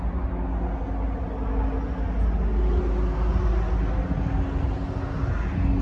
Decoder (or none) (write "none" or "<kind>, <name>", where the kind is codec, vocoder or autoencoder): none